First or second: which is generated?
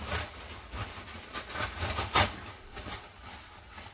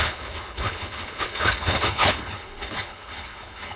second